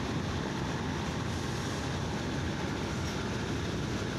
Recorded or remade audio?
recorded